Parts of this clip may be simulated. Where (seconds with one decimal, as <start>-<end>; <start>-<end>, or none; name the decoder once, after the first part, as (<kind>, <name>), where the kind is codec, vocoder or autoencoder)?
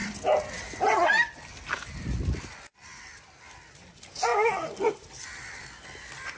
none